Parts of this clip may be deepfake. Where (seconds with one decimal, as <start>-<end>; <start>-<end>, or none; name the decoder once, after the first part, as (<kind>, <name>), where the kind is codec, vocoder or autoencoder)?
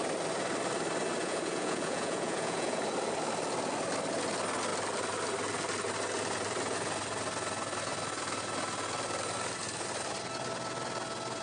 1.2-2.8 (vocoder, Vocos)